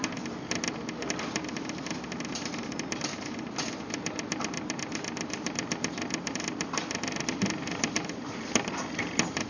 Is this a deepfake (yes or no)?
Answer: no